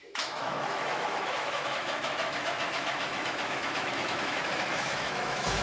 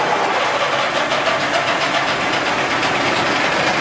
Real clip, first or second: second